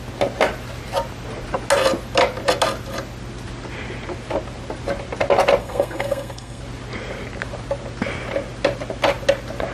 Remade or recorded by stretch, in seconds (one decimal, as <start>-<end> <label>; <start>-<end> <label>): 0.0-5.6 recorded; 5.6-6.6 remade; 6.6-9.7 recorded